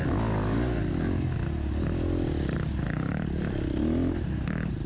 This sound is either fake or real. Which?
real